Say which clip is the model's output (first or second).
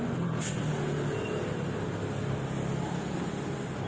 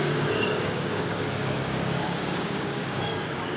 second